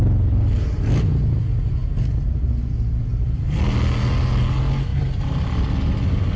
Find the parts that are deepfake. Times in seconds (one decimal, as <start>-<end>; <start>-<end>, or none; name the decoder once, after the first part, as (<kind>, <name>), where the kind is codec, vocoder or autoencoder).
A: none